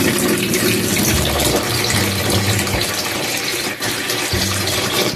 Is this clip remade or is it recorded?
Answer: remade